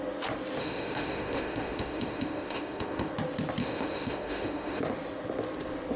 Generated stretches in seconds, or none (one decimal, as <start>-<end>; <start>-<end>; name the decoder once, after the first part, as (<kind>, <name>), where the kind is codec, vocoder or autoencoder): 0.6-3.1 (autoencoder, DAC-VAE); 3.6-4.8